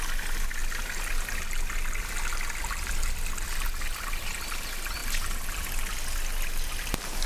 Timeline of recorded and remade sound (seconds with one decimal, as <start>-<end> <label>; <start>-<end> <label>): 0.0-7.3 recorded